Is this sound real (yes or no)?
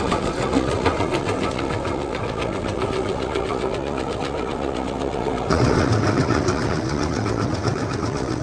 no